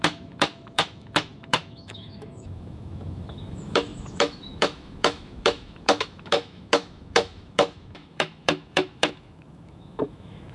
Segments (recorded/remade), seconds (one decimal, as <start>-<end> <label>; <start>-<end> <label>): 0.0-10.5 remade